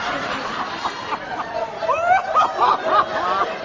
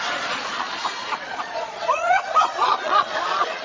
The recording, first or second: first